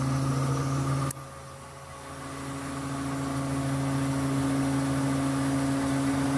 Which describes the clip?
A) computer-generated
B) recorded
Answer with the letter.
B